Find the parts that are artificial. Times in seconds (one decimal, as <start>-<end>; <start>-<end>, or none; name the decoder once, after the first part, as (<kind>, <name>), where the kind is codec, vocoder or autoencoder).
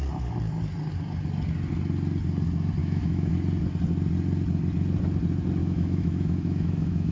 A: 2.8-3.3 (autoencoder, DAC-VAE); 5.6-7.1